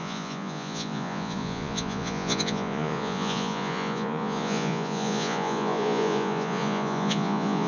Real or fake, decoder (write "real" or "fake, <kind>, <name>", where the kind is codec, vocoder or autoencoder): fake, vocoder, Vocos